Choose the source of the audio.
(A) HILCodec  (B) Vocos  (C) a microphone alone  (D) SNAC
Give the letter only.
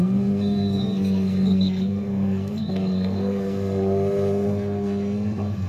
D